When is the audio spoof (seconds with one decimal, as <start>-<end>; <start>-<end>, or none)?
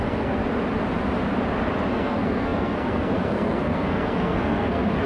0.0-0.4; 1.9-5.1